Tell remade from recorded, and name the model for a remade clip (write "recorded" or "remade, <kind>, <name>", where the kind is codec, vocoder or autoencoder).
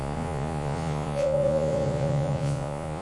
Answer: remade, vocoder, Vocos